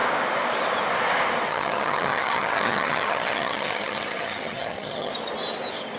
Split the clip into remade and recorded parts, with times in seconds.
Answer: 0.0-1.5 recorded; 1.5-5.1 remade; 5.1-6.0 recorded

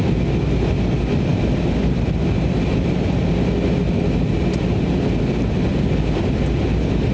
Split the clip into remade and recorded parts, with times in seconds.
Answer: 0.0-7.1 recorded

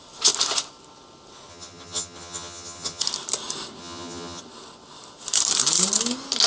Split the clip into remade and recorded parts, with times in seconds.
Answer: 0.0-1.5 recorded; 1.5-3.0 remade; 3.0-3.8 recorded; 3.8-4.4 remade; 4.4-6.5 recorded

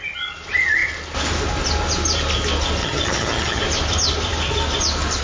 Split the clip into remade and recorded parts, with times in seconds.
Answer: 0.0-2.8 recorded; 2.8-3.6 remade; 3.6-5.2 recorded

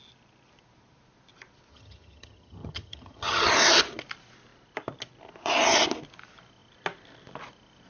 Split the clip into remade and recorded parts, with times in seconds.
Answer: 0.0-1.7 recorded; 1.7-3.5 remade; 3.5-7.9 recorded

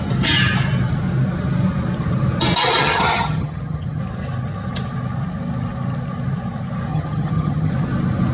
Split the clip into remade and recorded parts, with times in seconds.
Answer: 0.0-2.8 recorded; 2.8-4.0 remade; 4.0-6.9 recorded; 6.9-7.7 remade; 7.7-8.3 recorded